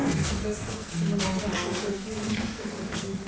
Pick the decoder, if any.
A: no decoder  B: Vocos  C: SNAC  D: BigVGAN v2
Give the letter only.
C